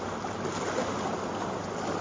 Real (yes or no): yes